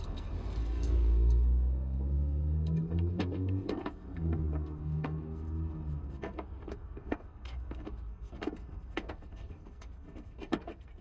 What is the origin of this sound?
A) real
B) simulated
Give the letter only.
B